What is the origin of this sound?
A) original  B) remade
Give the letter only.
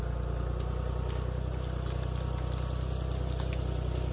A